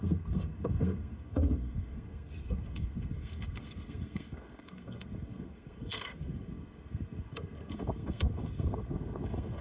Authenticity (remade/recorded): remade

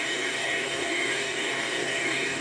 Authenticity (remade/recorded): remade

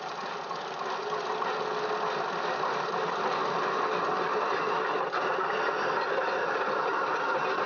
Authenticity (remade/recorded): recorded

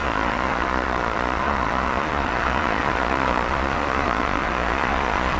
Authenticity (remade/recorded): remade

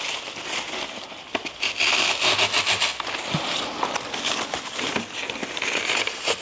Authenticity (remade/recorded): recorded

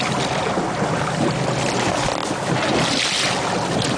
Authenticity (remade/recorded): recorded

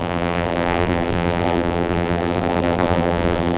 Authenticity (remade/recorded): remade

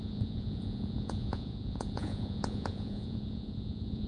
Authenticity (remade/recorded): remade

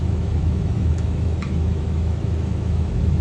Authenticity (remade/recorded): remade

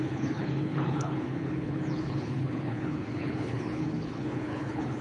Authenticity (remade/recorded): remade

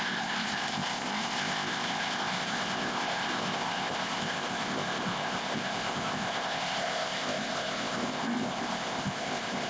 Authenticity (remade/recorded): remade